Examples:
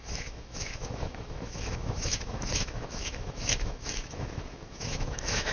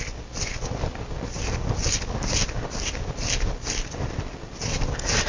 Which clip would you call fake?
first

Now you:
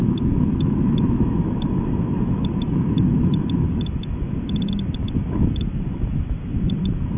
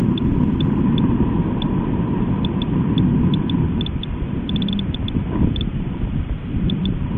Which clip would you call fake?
first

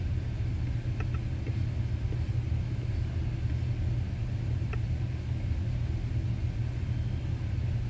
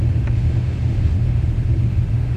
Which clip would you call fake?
second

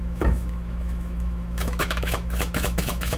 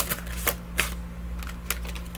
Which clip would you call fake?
first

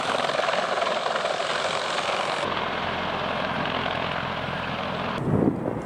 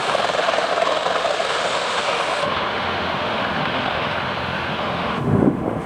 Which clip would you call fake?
second